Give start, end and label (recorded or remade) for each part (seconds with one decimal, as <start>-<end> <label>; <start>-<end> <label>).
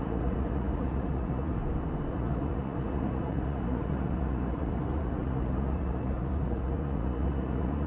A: 0.0-1.6 remade; 1.6-2.1 recorded; 2.1-7.9 remade